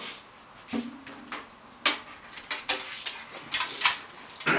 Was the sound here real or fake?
real